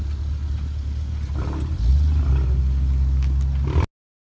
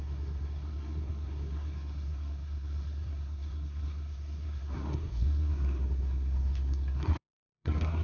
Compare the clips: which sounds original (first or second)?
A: first